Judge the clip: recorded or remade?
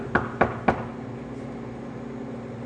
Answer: recorded